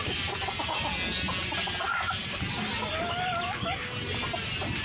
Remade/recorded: recorded